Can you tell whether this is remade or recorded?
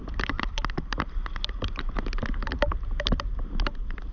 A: remade